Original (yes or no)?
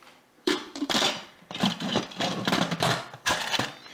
no